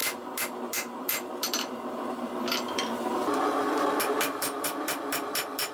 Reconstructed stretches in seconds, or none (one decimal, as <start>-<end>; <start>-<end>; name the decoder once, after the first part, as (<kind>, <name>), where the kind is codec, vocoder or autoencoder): 0.0-3.1 (vocoder, BigVGAN v2); 4.0-5.7